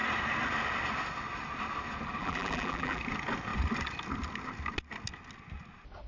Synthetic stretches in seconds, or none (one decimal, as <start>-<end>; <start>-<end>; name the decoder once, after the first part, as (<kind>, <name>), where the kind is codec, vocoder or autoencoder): 2.2-3.0 (vocoder, BigVGAN v2)